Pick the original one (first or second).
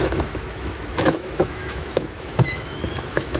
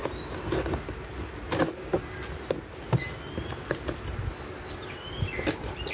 second